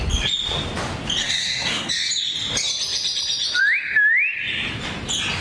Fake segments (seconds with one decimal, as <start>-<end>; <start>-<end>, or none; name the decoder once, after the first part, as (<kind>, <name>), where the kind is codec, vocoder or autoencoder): 1.2-1.9 (codec, SNAC)